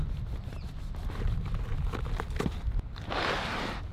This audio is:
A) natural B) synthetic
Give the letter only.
A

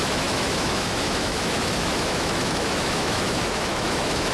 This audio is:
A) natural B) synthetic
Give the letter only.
B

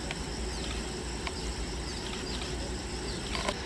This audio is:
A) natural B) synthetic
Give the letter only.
A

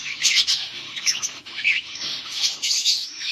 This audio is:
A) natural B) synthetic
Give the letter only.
B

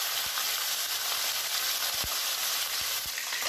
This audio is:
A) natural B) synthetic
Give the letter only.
A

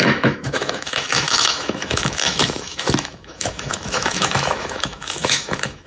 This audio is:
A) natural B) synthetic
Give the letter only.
B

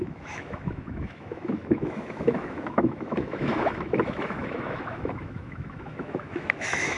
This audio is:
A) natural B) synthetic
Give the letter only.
B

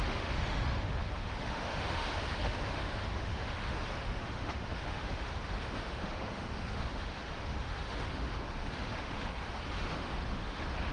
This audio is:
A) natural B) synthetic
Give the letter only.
B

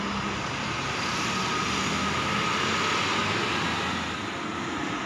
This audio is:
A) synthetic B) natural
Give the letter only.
B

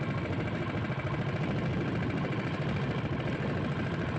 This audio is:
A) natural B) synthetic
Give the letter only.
A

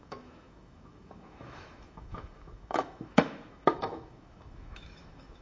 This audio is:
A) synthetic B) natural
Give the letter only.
A